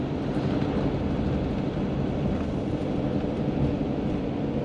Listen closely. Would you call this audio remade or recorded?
recorded